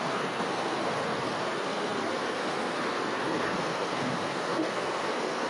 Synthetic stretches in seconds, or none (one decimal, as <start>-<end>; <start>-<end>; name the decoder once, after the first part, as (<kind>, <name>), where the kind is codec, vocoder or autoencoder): 0.0-5.5 (codec, SNAC)